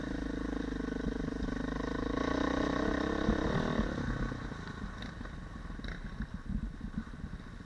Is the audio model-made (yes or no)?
no